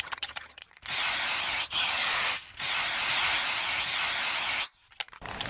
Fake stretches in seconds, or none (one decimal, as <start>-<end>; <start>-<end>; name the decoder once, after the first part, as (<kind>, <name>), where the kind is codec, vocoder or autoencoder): 0.0-0.6 (vocoder, HiFi-GAN); 1.4-2.0